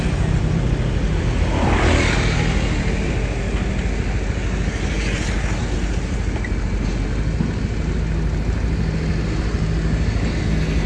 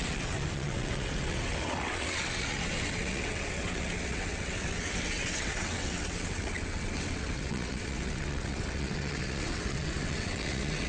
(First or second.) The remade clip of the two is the second